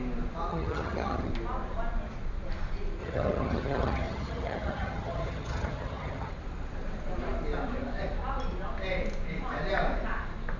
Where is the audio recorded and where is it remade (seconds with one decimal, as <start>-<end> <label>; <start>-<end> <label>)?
0.0-0.5 recorded; 0.5-1.3 remade; 1.3-3.0 recorded; 3.0-6.3 remade; 6.3-10.6 recorded